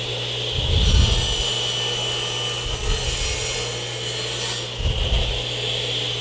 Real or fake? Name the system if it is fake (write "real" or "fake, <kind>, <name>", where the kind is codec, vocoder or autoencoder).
real